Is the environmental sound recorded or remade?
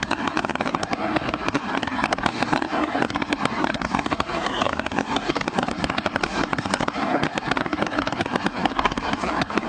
remade